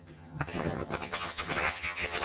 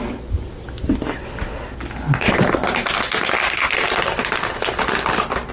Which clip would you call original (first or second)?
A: second